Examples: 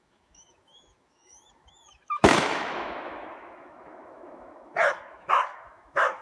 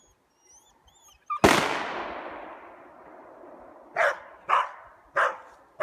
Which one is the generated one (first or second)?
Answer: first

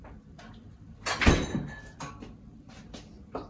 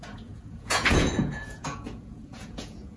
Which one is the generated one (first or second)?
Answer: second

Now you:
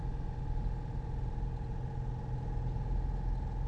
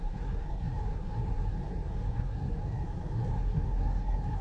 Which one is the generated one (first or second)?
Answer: second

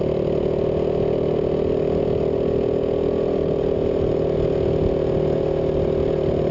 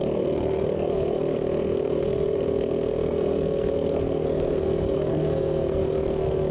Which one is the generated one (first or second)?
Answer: second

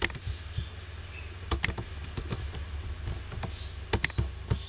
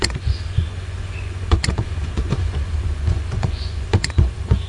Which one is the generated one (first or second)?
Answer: second